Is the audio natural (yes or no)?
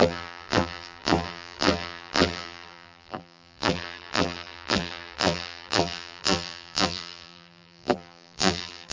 no